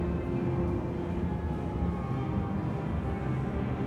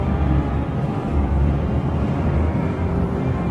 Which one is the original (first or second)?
first